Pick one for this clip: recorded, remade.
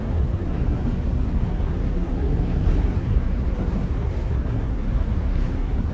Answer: remade